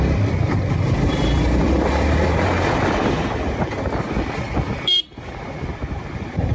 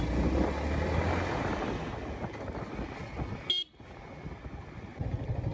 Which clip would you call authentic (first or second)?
second